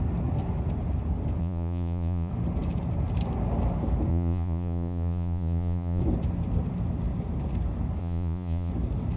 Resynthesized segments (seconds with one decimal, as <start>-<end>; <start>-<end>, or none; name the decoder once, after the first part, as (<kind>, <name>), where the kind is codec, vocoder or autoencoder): 1.4-2.3 (vocoder, Vocos); 4.1-6.0; 8.0-8.7